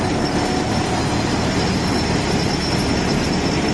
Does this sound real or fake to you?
real